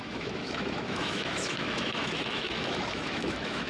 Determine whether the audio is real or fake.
fake